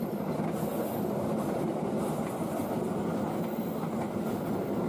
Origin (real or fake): real